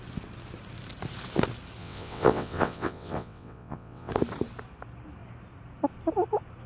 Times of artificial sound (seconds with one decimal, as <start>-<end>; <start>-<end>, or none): 1.8-4.1